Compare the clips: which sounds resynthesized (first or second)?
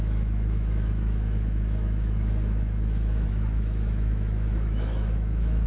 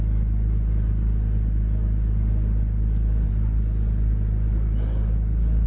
first